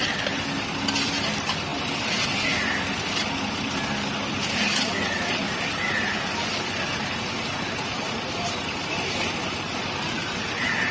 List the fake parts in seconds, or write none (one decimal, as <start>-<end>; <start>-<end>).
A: none